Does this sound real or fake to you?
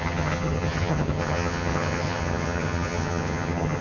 fake